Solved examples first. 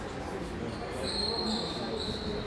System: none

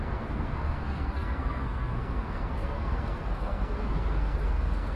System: codec, SNAC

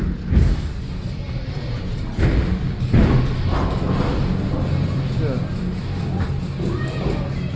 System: none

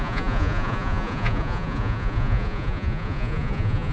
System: vocoder, Vocos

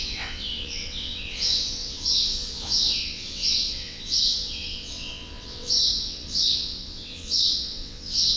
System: vocoder, WaveNeXt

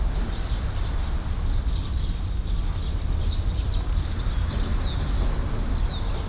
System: none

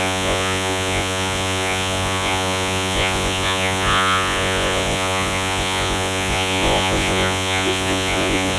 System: vocoder, Vocos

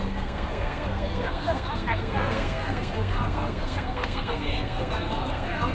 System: codec, SNAC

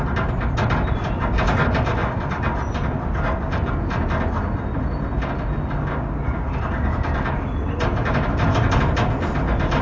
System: none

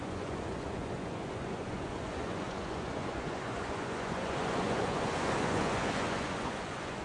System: vocoder, Vocos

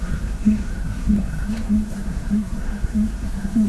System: codec, SNAC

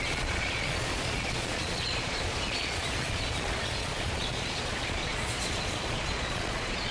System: vocoder, Vocos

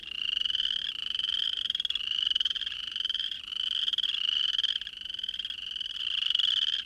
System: none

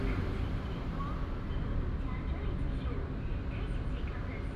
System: none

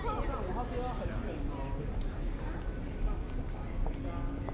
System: none